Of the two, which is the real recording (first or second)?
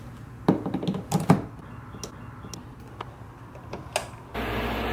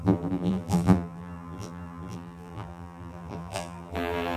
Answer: first